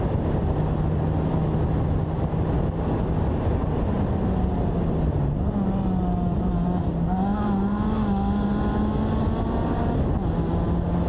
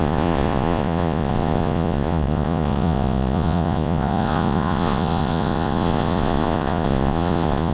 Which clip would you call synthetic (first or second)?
second